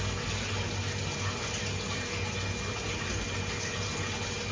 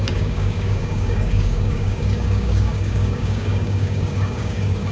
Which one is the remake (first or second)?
second